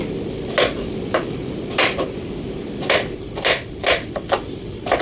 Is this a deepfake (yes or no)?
no